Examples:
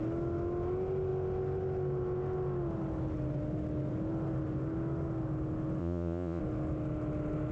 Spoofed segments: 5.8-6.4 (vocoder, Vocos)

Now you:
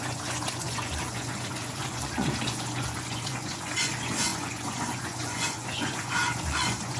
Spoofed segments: 0.0-7.0 (vocoder, Vocos)

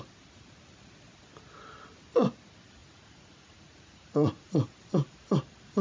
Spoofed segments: 2.8-4.5 (vocoder, Vocos)

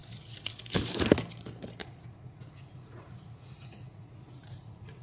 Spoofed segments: 0.0-0.6 (vocoder, Vocos); 1.8-5.0

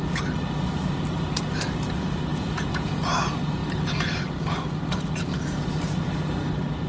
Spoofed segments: 2.3-3.1 (vocoder, Vocos)